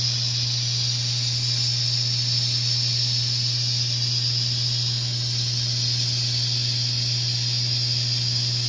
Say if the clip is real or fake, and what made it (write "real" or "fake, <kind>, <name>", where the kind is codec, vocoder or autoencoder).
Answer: real